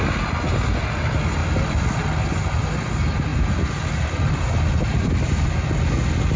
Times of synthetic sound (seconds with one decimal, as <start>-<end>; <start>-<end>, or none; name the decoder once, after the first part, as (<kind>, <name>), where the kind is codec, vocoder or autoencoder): 1.4-2.2 (vocoder, BigVGAN v2)